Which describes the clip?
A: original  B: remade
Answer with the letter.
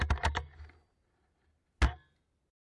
A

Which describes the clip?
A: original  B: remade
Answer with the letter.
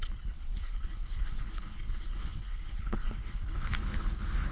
B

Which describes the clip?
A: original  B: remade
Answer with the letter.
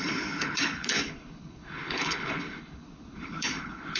B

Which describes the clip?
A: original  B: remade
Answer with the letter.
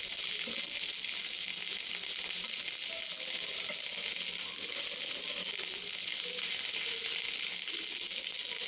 A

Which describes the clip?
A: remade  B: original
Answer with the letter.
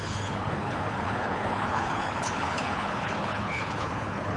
A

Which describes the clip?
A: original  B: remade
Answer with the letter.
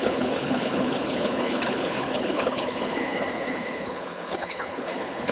B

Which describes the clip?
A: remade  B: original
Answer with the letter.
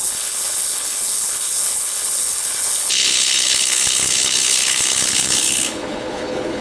A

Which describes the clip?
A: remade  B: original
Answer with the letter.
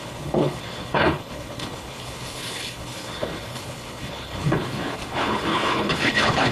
A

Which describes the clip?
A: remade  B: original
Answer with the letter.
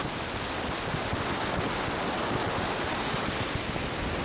B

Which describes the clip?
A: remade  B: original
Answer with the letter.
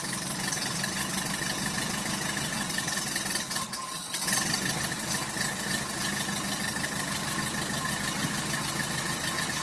B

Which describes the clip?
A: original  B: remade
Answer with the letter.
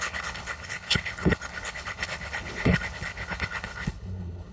B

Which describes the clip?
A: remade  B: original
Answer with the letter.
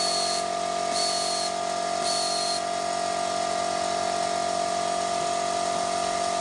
B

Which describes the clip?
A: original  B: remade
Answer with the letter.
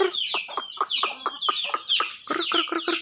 A